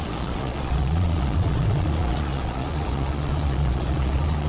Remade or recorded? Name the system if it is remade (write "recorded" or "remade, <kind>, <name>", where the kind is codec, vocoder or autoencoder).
remade, vocoder, Vocos